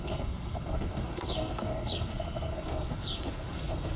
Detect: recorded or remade remade